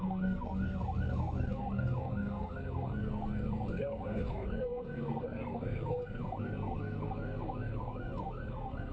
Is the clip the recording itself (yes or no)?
no